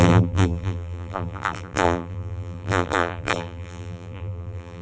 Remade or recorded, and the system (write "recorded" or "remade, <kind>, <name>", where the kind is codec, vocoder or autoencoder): remade, vocoder, BigVGAN v2